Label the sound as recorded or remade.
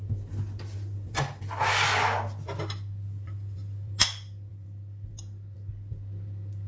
recorded